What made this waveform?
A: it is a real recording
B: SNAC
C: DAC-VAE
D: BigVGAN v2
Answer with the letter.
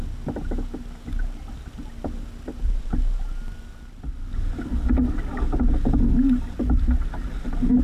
A